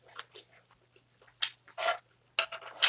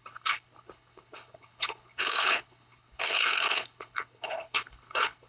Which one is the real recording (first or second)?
first